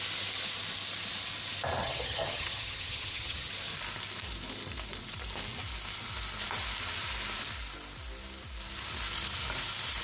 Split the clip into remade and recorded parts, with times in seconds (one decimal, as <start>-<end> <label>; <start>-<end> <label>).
0.0-1.8 recorded; 1.8-3.5 remade; 3.5-10.0 recorded